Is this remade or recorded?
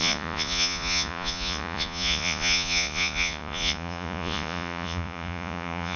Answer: remade